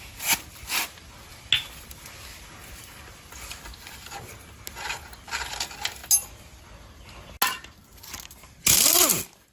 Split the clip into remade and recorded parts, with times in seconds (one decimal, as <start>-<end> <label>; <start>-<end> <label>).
0.0-9.5 recorded